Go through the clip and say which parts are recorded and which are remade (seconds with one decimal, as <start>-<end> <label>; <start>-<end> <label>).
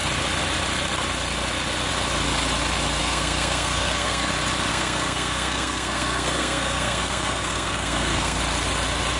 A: 0.0-3.0 recorded; 3.0-4.3 remade; 4.3-4.7 recorded; 4.7-8.4 remade; 8.4-9.2 recorded